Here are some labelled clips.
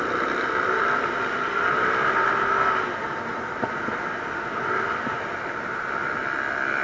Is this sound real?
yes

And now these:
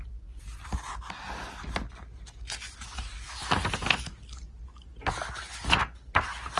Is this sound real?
yes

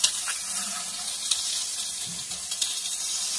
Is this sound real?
yes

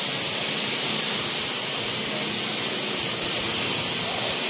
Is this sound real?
yes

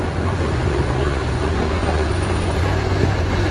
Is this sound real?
no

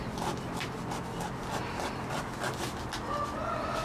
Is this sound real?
yes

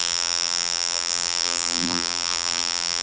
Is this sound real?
no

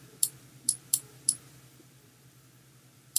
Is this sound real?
no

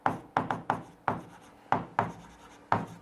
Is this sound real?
yes